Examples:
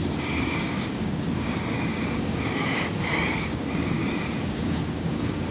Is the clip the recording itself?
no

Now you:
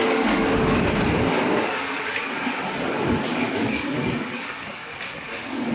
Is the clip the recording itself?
no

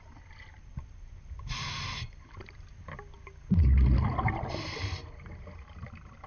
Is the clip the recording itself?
yes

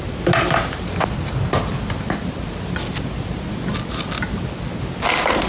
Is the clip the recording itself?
yes